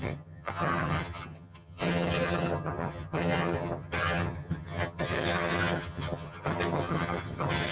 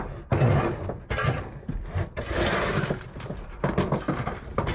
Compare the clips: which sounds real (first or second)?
second